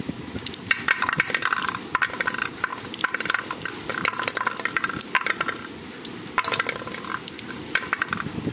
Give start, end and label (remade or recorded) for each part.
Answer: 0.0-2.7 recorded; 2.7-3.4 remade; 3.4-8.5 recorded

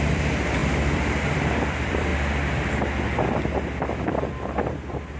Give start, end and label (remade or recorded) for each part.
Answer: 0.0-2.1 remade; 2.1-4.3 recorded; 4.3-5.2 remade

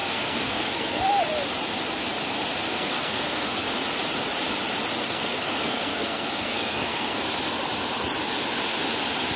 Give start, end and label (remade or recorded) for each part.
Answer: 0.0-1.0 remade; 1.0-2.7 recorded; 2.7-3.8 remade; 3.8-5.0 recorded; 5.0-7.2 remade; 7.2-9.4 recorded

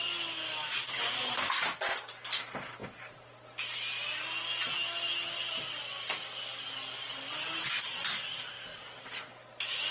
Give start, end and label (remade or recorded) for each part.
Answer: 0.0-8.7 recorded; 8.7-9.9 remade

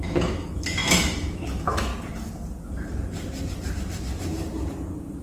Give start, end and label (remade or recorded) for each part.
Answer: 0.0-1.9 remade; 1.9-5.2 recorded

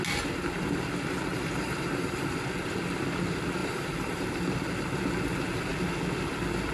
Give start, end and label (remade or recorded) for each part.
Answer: 0.0-1.3 recorded; 1.3-2.4 remade; 2.4-3.6 recorded; 3.6-4.2 remade; 4.2-6.7 recorded

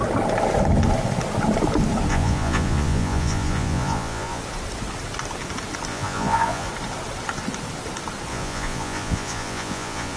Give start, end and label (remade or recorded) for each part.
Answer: 0.0-2.1 recorded; 2.1-4.4 remade; 4.4-5.9 recorded; 5.9-6.7 remade; 6.7-8.3 recorded; 8.3-10.2 remade

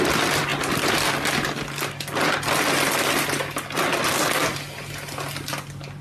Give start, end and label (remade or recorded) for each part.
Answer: 0.0-6.0 recorded